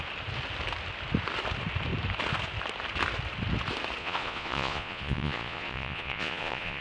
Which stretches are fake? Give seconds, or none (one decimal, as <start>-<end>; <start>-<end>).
4.0-6.8